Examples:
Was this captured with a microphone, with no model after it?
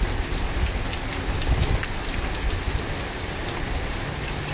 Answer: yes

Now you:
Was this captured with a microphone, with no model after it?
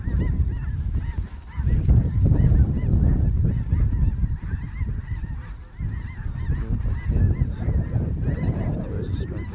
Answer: yes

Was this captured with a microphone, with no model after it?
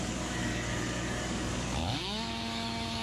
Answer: no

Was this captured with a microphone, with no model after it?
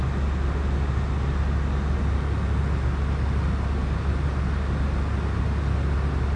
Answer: yes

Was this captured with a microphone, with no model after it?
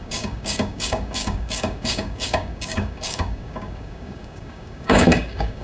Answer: no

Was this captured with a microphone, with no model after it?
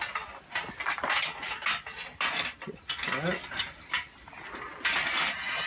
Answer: yes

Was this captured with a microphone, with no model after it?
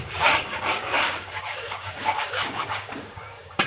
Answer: no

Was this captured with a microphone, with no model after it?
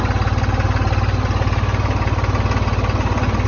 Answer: yes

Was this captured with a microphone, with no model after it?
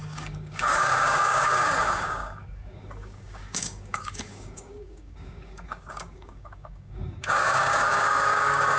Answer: no